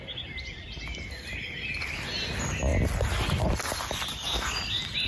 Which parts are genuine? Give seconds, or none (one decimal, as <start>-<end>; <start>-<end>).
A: 0.0-5.1